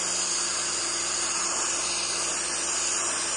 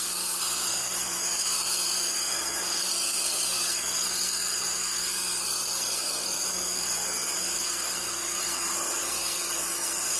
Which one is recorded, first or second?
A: first